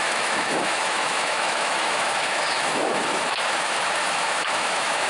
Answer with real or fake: fake